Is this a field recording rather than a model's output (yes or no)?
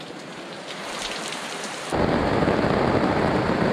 no